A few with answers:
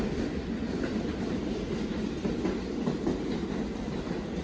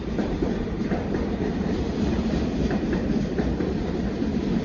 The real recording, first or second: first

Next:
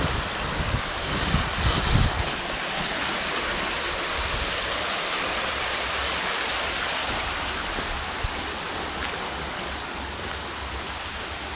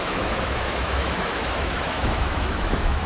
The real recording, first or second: first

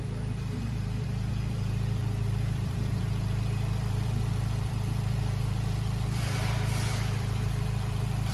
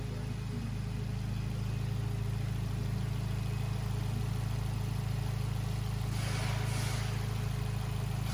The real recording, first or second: second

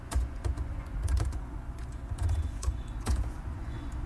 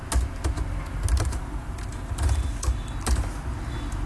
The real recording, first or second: second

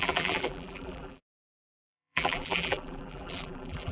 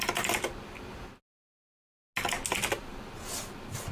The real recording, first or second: second